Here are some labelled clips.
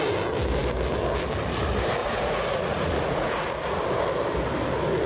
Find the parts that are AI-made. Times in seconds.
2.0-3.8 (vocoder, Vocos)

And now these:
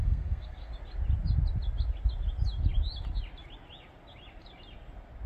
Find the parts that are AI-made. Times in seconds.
0.0-0.7 (codec, SNAC)

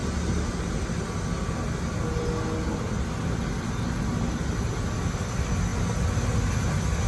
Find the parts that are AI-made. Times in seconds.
none